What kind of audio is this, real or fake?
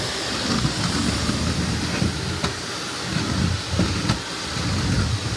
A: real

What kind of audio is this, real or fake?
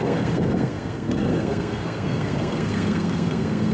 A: fake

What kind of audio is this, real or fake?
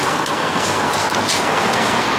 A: fake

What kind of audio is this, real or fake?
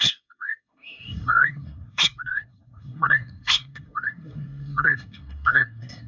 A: fake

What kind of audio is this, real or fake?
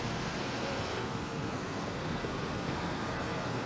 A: fake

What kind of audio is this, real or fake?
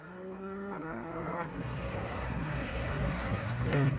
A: fake